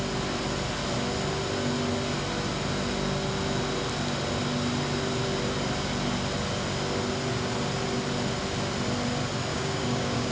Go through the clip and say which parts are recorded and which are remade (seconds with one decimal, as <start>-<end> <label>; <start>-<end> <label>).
0.0-9.5 recorded; 9.5-10.3 remade